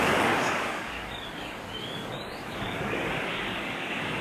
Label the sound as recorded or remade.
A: remade